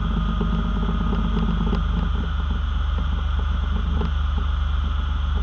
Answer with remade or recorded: recorded